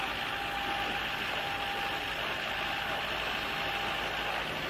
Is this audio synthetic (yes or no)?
no